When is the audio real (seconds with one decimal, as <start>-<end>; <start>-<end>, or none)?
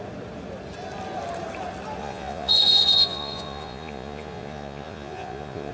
0.0-2.0